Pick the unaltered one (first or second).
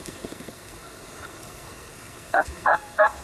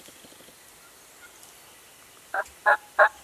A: second